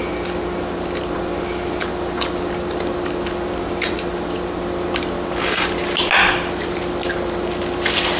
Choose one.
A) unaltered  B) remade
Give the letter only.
A